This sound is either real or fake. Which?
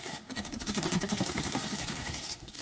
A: fake